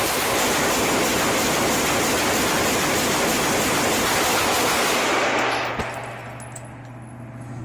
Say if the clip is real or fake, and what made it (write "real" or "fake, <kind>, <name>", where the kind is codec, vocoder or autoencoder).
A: real